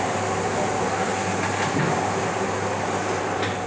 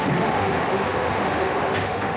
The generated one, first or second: second